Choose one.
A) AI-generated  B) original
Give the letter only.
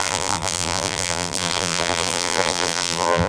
A